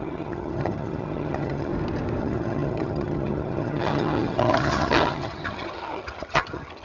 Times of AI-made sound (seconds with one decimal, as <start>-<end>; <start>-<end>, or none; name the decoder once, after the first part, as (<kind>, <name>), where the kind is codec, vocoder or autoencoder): 0.0-1.7 (vocoder, HiFi-GAN); 2.2-6.8